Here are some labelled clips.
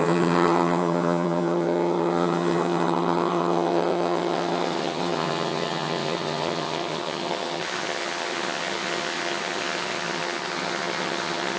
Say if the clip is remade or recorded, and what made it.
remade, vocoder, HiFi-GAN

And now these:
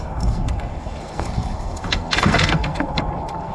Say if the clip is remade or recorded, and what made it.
remade, codec, SNAC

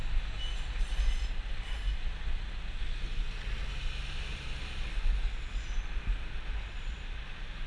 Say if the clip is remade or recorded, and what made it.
recorded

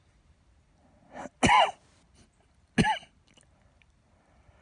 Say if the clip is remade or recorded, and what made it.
recorded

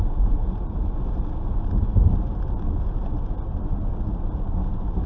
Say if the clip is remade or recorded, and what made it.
recorded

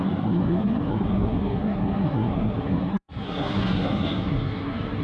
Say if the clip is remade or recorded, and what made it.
remade, codec, SNAC